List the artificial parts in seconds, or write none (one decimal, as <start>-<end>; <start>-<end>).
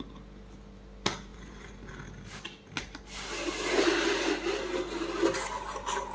1.3-1.9